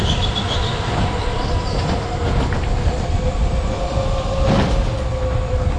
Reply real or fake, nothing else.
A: real